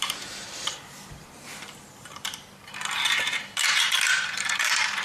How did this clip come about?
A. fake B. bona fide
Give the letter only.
A